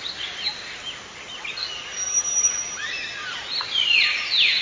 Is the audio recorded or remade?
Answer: recorded